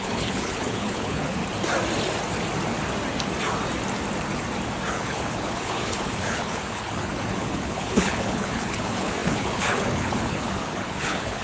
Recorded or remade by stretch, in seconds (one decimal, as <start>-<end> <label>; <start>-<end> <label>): 0.0-1.4 remade; 1.4-4.9 recorded; 4.9-11.4 remade